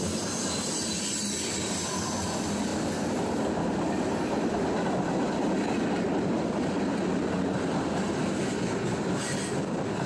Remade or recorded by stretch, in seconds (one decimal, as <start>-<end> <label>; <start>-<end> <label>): 0.0-10.1 recorded